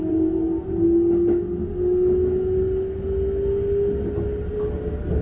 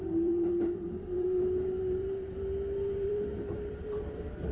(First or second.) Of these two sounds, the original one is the first